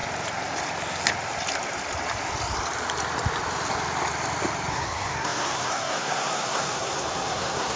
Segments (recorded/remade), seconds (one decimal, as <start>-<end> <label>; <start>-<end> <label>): 0.0-4.7 recorded; 4.7-7.8 remade